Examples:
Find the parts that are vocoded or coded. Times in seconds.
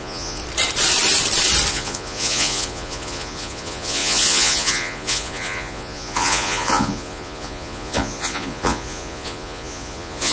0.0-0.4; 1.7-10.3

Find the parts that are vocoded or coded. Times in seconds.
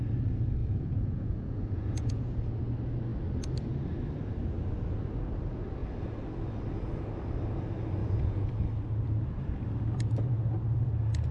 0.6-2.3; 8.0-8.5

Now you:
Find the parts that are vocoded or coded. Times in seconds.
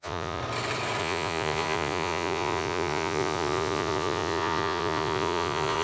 0.0-0.4; 1.0-5.8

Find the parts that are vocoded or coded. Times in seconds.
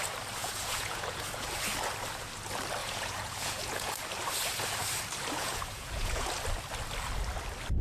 0.4-1.5; 2.8-3.9; 5.4-6.3